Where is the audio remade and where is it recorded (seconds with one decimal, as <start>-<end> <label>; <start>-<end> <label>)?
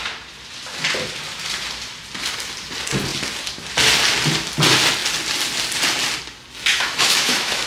0.0-6.7 recorded; 6.7-7.7 remade